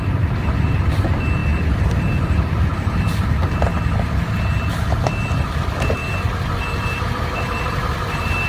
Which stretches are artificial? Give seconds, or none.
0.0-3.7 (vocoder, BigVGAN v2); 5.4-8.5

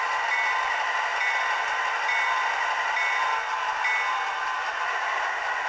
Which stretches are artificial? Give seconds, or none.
none

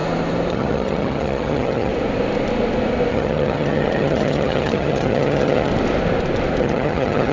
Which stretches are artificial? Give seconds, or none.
0.5-1.9 (vocoder, HiFi-GAN); 3.1-5.7; 6.6-7.3

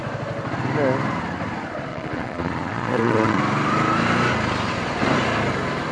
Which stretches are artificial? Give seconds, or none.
1.9-3.4 (vocoder, Vocos)

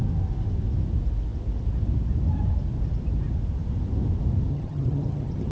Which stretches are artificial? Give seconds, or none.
4.5-5.5 (vocoder, HiFi-GAN)